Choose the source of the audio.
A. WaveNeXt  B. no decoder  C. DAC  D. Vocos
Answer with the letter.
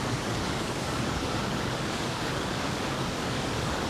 C